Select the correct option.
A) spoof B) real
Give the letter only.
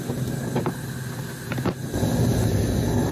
B